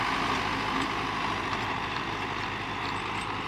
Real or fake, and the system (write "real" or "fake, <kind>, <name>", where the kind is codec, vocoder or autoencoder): real